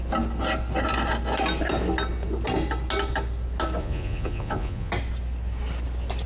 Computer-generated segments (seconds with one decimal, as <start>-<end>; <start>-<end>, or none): 3.8-4.9